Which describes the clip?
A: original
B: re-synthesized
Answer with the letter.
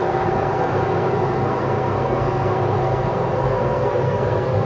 B